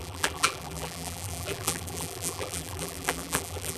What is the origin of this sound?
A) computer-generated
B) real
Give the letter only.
A